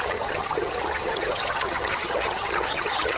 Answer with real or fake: fake